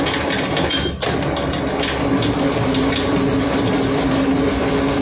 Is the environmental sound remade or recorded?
recorded